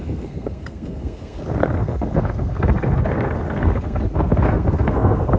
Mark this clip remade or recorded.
remade